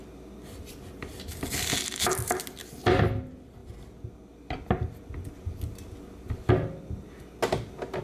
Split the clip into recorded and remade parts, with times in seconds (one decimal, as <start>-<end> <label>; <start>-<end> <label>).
0.0-8.0 recorded